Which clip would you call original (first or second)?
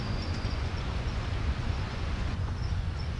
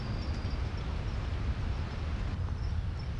second